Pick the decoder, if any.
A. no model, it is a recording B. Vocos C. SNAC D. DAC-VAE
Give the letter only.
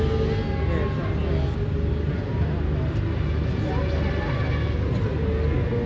A